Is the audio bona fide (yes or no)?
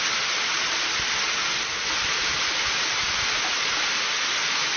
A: yes